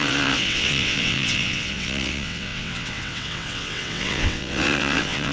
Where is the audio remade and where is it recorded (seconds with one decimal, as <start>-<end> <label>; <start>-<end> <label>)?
0.0-5.3 remade

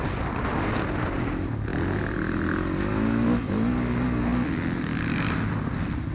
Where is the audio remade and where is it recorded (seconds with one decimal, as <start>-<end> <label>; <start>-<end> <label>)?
0.0-6.1 recorded

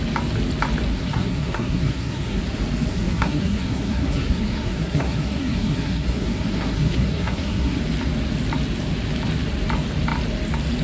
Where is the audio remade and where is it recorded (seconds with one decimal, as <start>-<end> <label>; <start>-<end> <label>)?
0.0-0.9 recorded; 0.9-2.4 remade; 2.4-2.9 recorded; 2.9-7.8 remade; 7.8-10.8 recorded

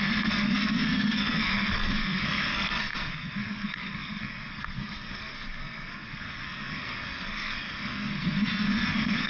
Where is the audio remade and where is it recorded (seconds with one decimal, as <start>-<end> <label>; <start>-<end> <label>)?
0.0-9.3 remade

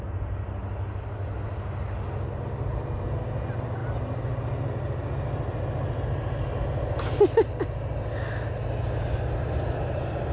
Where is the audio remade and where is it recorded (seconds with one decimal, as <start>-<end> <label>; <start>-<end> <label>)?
0.0-10.3 recorded

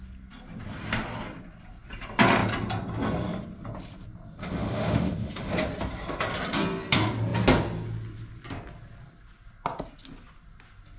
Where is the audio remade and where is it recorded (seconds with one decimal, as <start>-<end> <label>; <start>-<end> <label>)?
0.0-4.4 recorded; 4.4-5.5 remade; 5.5-11.0 recorded